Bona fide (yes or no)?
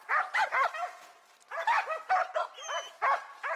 yes